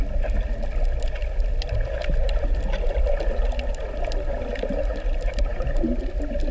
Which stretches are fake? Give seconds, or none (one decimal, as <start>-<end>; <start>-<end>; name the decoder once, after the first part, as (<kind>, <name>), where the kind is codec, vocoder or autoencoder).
5.5-6.0 (vocoder, BigVGAN v2)